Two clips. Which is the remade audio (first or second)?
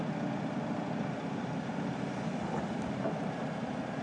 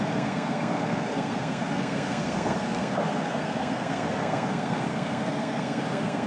second